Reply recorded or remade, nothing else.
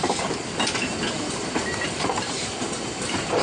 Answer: remade